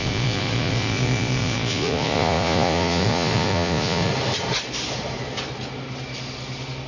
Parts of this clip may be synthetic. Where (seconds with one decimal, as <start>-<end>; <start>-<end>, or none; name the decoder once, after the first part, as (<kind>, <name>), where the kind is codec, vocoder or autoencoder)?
0.0-4.1 (vocoder, Vocos)